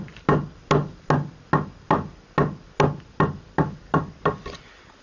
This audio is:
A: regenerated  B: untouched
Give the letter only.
B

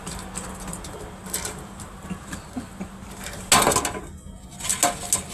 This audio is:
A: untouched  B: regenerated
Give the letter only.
A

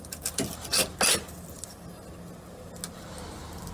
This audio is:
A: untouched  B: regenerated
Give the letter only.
A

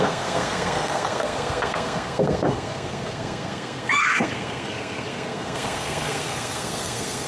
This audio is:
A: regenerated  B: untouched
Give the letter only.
A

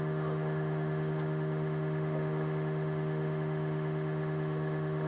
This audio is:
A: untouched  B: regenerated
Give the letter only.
B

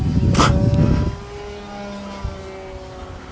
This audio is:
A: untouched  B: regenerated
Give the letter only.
A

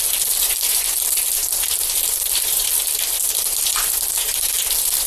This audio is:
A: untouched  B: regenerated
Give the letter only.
A